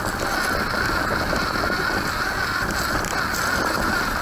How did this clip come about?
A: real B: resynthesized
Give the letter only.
A